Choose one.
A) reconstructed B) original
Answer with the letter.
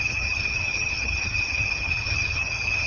A